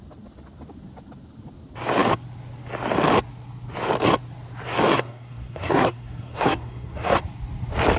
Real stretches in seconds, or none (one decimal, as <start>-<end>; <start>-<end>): 0.0-4.9; 7.2-8.0